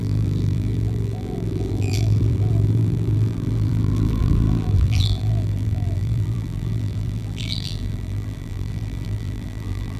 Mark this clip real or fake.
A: fake